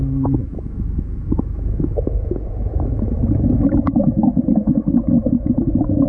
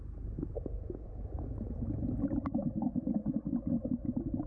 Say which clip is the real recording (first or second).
second